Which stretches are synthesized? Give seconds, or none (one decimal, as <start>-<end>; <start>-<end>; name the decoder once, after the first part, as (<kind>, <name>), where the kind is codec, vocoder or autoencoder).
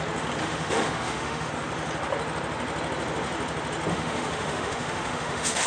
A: 0.4-1.5 (autoencoder, DAC-VAE); 3.9-5.7